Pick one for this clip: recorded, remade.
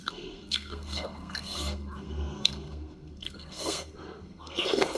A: remade